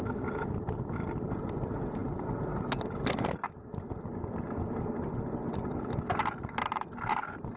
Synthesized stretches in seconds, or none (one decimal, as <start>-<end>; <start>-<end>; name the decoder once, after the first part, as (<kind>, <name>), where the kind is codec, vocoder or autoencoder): none